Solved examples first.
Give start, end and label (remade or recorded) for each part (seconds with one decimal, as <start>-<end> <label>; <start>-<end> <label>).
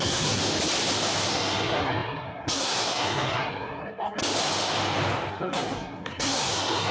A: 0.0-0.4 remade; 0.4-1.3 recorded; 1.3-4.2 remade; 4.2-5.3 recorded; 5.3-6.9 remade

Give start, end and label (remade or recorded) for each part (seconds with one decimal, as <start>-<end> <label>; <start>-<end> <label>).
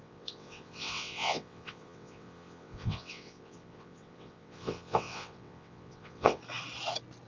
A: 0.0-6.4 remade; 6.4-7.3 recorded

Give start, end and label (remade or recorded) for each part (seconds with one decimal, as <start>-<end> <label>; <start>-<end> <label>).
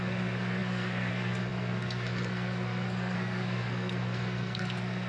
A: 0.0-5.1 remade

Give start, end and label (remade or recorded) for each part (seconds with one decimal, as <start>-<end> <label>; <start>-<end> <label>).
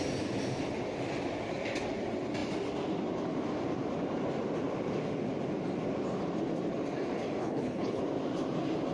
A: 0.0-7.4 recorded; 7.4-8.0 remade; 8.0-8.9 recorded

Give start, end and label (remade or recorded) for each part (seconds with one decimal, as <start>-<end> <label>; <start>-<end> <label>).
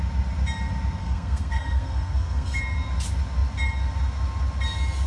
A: 0.0-1.0 recorded; 1.0-2.6 remade; 2.6-5.1 recorded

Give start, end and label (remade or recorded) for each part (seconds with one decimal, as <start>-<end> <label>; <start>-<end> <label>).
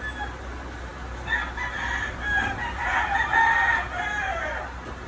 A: 0.0-5.1 recorded